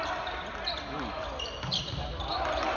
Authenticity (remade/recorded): recorded